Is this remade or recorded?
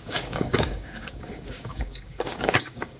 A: remade